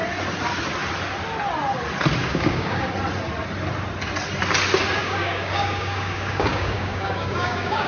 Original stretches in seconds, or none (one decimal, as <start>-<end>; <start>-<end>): 0.0-2.2; 2.9-5.0